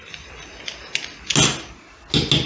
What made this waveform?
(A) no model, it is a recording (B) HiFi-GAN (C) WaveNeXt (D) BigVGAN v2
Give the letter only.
A